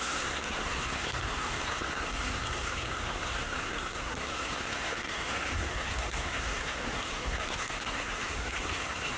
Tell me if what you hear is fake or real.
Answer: fake